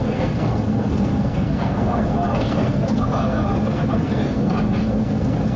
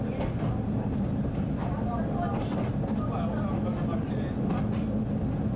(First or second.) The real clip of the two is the second